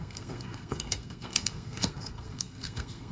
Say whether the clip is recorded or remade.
remade